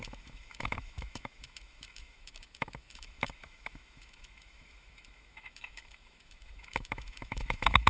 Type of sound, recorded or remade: remade